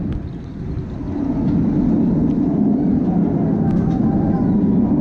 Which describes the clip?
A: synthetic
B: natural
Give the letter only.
B